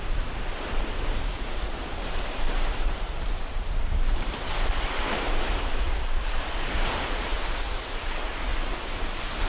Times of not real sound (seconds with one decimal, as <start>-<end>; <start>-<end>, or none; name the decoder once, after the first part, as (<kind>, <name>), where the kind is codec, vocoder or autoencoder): 0.0-8.5 (vocoder, BigVGAN v2)